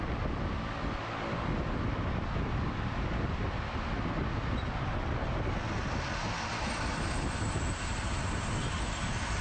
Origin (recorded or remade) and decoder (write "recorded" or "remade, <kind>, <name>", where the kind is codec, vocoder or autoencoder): recorded